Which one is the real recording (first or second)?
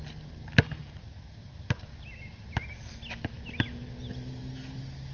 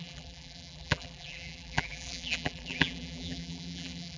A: first